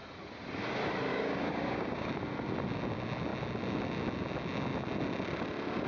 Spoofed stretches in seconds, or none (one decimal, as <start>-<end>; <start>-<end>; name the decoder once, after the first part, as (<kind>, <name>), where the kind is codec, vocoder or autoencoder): 1.1-2.1 (codec, DAC)